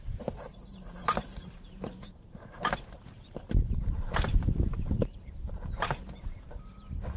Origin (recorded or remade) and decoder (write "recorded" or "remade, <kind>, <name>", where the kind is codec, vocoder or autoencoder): remade, vocoder, BigVGAN v2